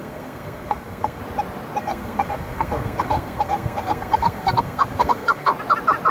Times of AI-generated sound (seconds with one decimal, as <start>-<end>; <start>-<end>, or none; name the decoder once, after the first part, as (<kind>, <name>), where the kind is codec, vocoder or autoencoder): 0.0-1.2 (codec, SNAC); 1.8-5.5